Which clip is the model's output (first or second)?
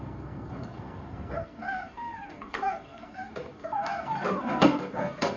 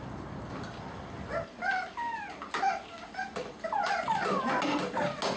first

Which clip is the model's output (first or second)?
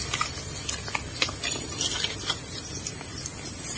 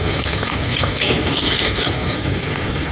second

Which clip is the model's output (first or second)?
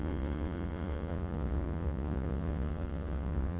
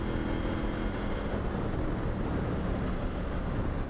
first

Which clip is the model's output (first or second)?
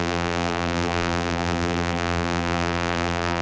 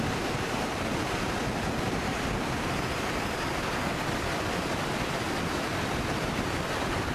first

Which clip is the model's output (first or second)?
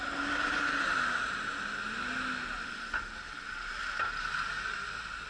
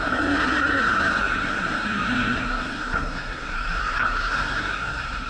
second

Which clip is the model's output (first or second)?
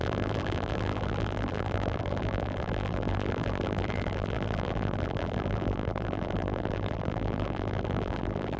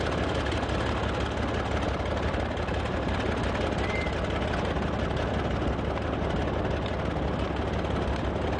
first